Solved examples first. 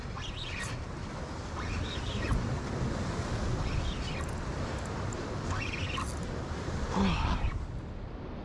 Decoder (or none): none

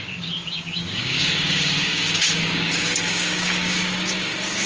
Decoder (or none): codec, DAC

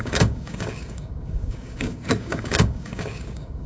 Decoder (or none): codec, DAC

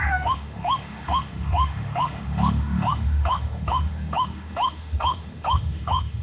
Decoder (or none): autoencoder, DAC-VAE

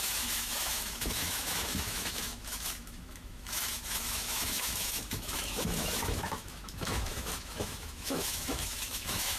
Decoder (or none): autoencoder, DAC-VAE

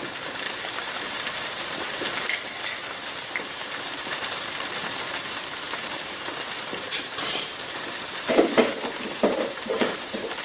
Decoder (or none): vocoder, BigVGAN v2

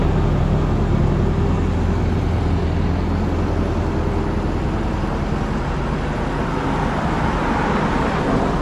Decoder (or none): none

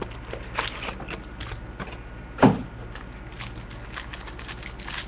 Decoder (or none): none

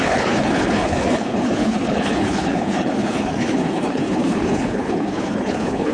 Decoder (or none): codec, HILCodec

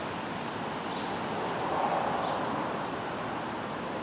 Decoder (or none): none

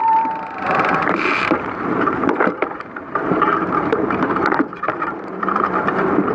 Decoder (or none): vocoder, BigVGAN v2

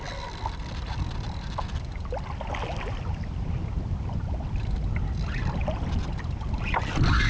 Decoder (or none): none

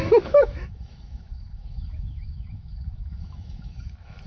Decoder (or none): autoencoder, DAC-VAE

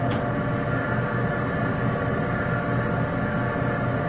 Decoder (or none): none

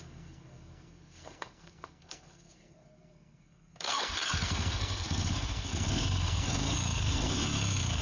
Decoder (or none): codec, SNAC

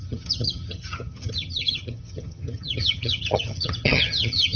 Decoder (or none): vocoder, HiFi-GAN